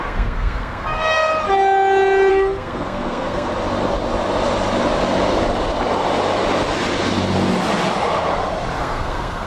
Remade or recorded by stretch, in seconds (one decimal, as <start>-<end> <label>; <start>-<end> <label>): 0.0-1.3 remade; 1.3-2.3 recorded; 2.3-3.5 remade; 3.5-8.8 recorded; 8.8-9.5 remade